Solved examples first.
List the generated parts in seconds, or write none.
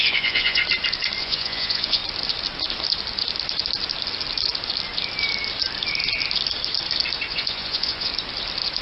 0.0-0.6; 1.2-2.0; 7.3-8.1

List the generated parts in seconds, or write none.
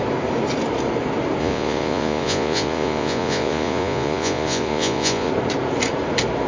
1.4-5.3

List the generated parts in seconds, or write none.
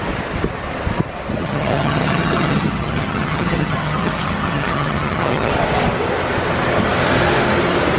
1.4-5.5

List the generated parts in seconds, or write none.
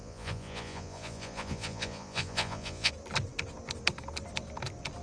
0.0-2.9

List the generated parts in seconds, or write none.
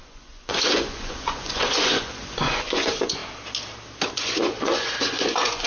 0.0-3.2; 4.1-5.7